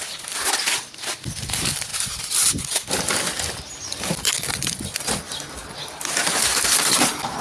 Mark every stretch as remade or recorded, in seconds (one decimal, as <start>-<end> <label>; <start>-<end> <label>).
0.0-7.4 recorded